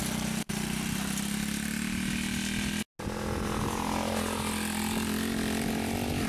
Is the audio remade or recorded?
recorded